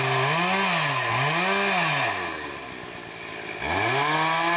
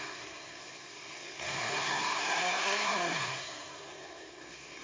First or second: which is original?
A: first